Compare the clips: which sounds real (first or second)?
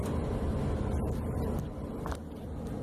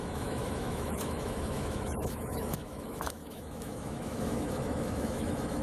first